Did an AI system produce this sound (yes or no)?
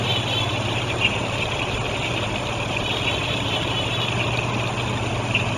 no